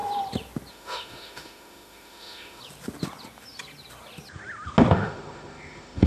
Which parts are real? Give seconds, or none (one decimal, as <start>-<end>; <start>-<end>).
0.0-0.7; 2.6-4.9